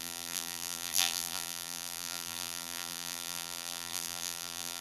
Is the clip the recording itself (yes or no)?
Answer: no